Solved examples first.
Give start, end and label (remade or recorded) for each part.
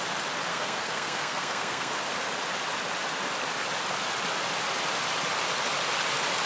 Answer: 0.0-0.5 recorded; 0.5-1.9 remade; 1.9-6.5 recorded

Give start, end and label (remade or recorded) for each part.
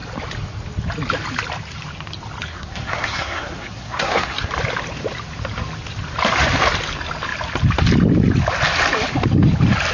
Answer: 0.0-2.5 recorded; 2.5-4.5 remade; 4.5-9.9 recorded